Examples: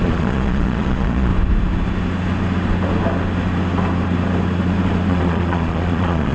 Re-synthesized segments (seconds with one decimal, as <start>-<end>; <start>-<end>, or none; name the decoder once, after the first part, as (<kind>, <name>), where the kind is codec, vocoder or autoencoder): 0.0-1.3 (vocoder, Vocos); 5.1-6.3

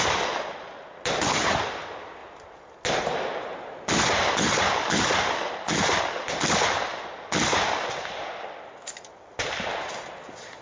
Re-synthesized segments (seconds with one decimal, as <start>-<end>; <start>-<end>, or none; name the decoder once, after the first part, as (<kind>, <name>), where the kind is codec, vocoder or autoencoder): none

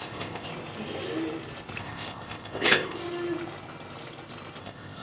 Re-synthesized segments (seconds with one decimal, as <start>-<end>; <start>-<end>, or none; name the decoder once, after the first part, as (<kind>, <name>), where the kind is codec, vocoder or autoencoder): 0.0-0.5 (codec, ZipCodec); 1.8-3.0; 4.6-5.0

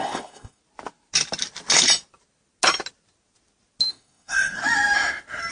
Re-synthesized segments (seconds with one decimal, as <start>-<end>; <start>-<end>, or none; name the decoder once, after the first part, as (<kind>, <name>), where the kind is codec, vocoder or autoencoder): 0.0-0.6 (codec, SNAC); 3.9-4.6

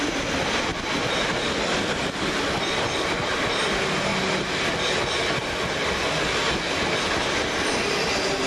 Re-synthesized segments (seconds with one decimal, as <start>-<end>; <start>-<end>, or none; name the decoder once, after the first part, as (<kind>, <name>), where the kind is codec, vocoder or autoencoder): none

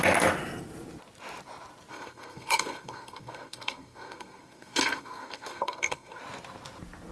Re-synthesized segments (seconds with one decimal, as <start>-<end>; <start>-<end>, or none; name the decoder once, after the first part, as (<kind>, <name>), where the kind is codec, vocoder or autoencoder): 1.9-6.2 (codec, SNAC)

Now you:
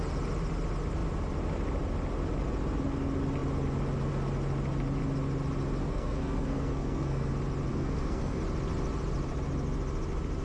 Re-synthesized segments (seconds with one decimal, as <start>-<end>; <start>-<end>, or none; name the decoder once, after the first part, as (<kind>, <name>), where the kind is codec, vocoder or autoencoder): 5.8-7.3 (codec, SNAC); 7.7-8.4

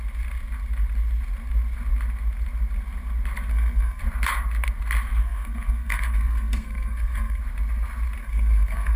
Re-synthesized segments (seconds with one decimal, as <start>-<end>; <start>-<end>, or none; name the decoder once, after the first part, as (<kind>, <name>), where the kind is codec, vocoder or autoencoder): 3.5-4.0 (codec, SNAC); 5.2-7.4; 8.2-9.0